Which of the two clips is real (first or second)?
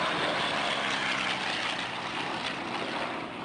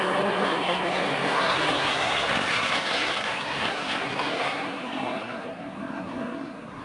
first